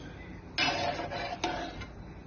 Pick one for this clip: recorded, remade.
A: recorded